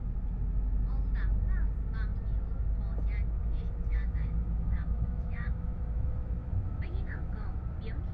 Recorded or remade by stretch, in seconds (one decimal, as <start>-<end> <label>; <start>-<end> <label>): 0.0-3.9 recorded; 3.9-7.6 remade; 7.6-8.1 recorded